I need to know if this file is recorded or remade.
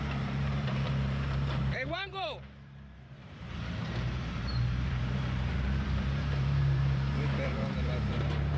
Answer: remade